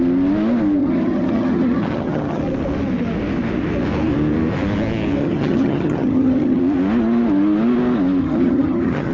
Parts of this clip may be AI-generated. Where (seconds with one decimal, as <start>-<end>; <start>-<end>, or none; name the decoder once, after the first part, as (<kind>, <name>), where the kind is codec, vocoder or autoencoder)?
0.8-2.4 (vocoder, HiFi-GAN); 5.2-6.6; 8.2-9.1